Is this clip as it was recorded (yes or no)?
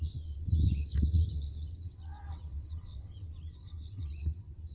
no